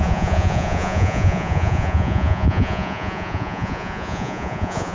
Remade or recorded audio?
remade